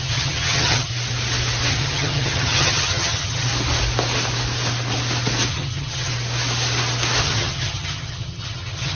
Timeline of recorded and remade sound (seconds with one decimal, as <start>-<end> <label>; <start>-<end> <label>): 0.0-0.9 remade; 0.9-1.7 recorded; 1.7-3.5 remade; 3.5-5.5 recorded; 5.5-6.1 remade; 6.1-7.2 recorded; 7.2-8.9 remade